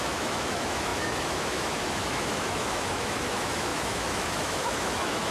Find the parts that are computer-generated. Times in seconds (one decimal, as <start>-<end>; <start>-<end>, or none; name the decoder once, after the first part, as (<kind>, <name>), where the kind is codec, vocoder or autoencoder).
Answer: 0.0-5.3 (autoencoder, DAC-VAE)